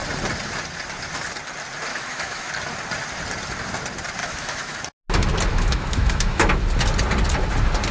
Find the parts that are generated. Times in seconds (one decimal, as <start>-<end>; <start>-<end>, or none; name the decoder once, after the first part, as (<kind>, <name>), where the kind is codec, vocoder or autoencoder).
1.9-2.5 (autoencoder, DAC-VAE); 4.2-4.8; 5.5-6.5